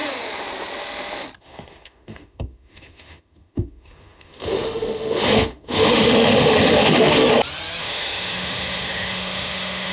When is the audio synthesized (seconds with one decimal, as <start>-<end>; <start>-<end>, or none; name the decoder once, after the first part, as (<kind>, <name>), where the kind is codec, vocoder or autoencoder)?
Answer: 1.4-7.2 (autoencoder, DAC-VAE); 7.8-9.9